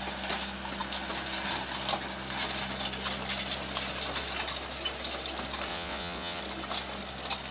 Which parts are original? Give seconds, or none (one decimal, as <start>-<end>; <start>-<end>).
0.0-5.7; 6.4-7.5